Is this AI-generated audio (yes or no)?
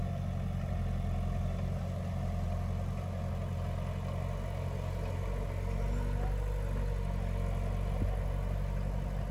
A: no